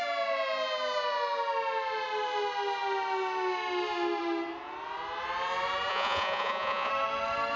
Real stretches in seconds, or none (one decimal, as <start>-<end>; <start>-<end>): 0.0-5.9; 6.9-7.6